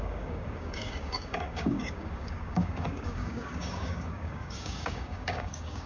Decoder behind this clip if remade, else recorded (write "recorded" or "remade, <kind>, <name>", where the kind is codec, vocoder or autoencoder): remade, codec, DAC